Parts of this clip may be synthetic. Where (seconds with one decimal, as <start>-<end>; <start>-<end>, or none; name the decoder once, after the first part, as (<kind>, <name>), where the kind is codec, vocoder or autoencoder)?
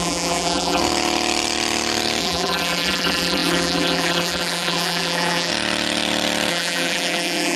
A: 0.0-0.8 (vocoder, BigVGAN v2); 2.2-5.5; 6.5-7.6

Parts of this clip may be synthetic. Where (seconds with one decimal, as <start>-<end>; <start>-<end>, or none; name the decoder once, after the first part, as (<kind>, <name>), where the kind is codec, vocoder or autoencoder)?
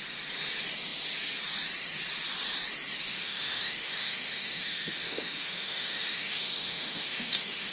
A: 3.1-7.7 (autoencoder, DAC-VAE)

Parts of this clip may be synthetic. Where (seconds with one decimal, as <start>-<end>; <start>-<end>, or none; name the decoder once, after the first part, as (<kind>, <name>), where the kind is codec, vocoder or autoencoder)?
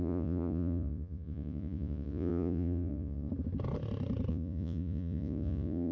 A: 0.0-3.3 (vocoder, Vocos); 4.3-5.9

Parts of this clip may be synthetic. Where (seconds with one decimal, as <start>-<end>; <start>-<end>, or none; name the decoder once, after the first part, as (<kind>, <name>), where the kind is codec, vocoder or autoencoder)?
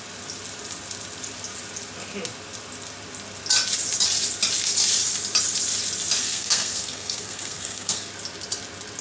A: 6.2-8.1 (codec, SNAC)